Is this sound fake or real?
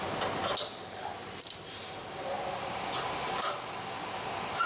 real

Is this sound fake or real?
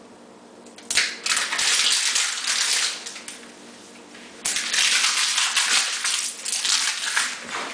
real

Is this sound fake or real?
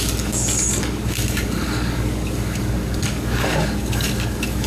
fake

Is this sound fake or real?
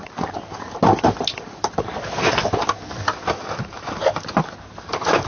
real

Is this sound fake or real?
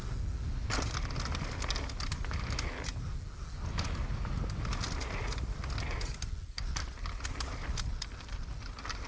real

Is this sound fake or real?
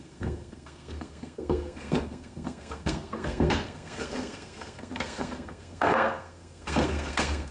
fake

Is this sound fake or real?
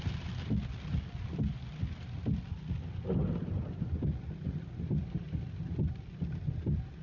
real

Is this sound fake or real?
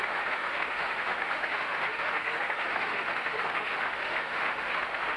fake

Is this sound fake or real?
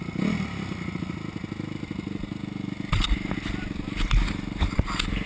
real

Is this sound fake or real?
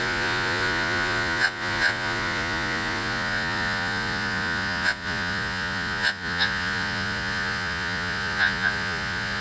fake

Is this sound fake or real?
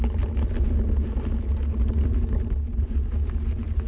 real